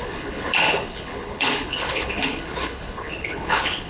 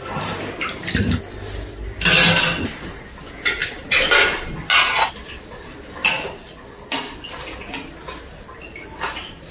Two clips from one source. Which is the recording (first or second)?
second